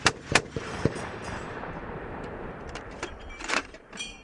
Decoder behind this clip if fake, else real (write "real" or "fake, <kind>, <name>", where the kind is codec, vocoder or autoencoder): fake, vocoder, BigVGAN v2